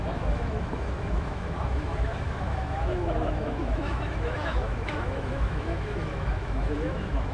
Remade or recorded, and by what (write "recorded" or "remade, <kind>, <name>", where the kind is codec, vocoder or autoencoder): remade, autoencoder, DAC-VAE